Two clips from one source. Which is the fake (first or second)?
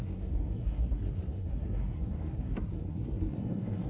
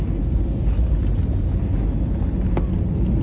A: first